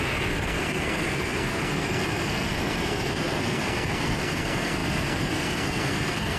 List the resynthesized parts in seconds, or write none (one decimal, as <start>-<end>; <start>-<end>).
0.0-6.4